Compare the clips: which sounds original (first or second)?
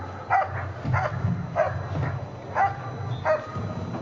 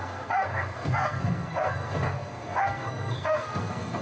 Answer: first